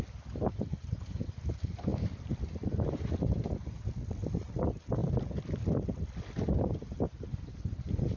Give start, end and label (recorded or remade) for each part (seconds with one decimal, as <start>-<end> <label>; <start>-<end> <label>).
0.0-8.2 recorded